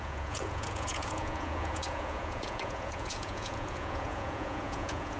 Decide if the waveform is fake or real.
fake